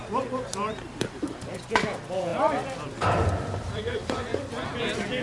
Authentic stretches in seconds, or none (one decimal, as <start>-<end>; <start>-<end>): 4.3-5.2